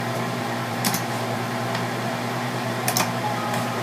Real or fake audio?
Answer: fake